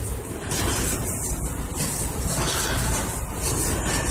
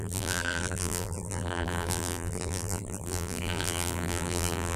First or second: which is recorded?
first